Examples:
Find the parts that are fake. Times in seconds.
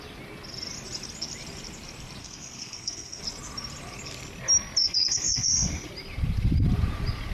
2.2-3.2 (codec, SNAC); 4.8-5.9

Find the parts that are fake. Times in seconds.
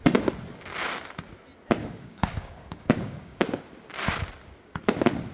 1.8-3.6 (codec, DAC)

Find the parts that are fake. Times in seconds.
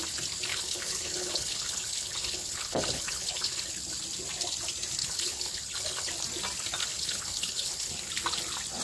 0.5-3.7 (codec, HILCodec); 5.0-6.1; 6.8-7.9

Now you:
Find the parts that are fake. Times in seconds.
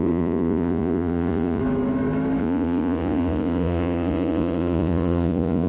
0.0-1.6 (vocoder, Vocos); 2.4-5.7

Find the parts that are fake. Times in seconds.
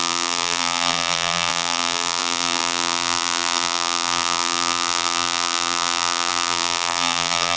0.0-7.6 (vocoder, BigVGAN v2)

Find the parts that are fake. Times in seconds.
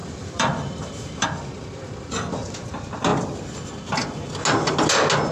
0.0-2.1 (vocoder, BigVGAN v2)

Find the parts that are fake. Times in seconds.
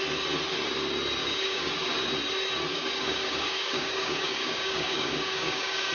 1.2-1.7 (codec, DAC); 2.7-5.9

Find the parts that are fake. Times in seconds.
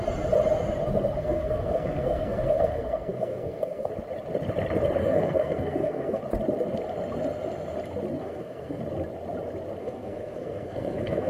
1.2-3.9 (codec, SNAC); 5.0-6.2; 8.2-8.8; 9.8-11.3